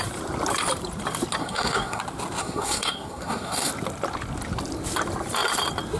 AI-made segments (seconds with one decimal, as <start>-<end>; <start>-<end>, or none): 1.4-2.0; 2.4-3.7